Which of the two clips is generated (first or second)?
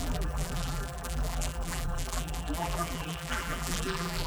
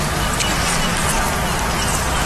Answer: first